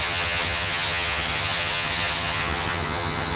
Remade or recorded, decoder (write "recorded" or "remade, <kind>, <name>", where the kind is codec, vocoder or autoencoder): remade, vocoder, HiFi-GAN